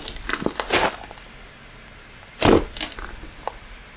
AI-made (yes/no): no